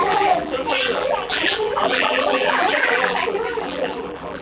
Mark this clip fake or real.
fake